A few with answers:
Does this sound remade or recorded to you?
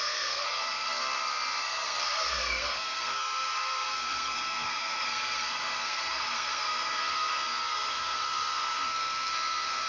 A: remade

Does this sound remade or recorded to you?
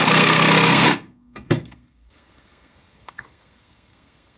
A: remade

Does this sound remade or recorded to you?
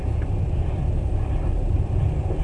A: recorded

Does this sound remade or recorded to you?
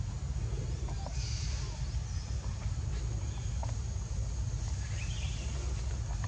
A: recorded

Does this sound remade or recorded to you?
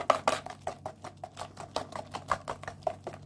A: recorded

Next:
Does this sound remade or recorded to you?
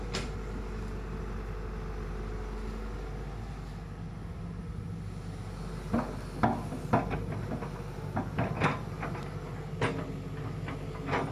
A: recorded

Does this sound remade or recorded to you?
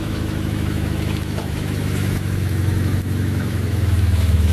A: remade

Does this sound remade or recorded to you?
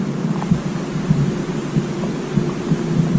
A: recorded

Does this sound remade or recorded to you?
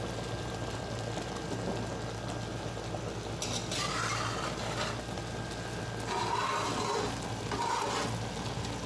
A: recorded